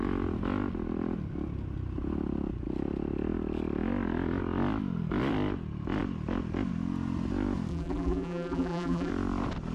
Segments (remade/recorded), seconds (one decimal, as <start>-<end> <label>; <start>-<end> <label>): 0.0-7.7 recorded; 7.7-9.1 remade; 9.1-9.7 recorded